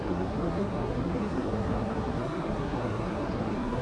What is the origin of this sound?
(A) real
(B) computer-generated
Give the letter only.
B